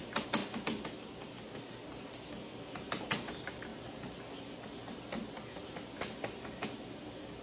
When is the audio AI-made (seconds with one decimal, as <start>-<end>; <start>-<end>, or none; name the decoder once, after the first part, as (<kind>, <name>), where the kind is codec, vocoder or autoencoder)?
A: none